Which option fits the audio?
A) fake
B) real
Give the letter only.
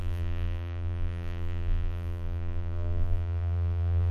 A